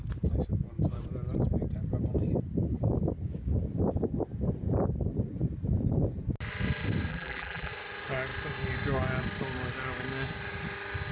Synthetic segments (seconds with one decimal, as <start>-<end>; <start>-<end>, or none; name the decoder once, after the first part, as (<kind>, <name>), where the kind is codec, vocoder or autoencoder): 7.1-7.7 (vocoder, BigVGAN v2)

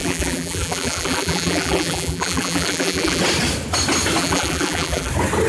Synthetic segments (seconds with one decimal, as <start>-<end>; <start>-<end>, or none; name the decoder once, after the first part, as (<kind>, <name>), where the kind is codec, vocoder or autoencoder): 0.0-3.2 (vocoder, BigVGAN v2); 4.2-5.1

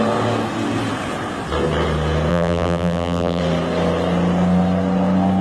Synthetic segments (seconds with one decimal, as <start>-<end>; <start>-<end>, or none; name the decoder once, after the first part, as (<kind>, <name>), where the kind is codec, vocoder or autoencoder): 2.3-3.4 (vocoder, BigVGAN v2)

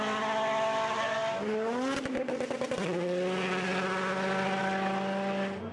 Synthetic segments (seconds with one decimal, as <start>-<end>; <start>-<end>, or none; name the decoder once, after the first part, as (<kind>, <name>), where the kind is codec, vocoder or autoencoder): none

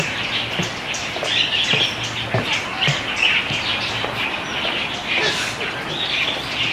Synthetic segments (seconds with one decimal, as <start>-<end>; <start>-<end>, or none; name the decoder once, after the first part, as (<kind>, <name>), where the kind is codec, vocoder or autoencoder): 0.7-1.8 (vocoder, BigVGAN v2)

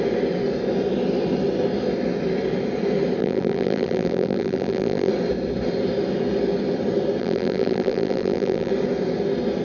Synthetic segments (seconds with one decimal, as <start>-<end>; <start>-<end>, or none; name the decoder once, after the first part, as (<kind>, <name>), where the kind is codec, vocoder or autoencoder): 3.2-5.1 (vocoder, BigVGAN v2); 7.2-8.7

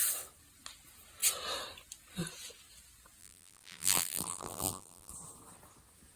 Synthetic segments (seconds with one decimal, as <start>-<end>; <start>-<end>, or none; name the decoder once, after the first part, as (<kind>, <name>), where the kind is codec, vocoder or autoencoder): 3.2-5.1 (vocoder, BigVGAN v2)

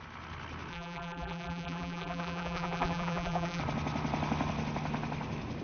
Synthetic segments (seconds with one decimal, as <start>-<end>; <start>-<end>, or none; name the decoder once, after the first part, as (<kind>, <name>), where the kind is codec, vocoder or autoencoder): 0.7-3.6 (vocoder, BigVGAN v2)